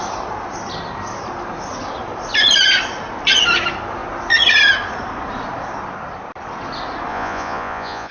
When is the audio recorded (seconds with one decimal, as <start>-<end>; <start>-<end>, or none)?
0.0-7.1